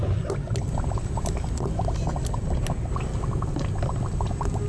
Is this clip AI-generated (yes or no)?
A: no